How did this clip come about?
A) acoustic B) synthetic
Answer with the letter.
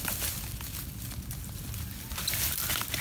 A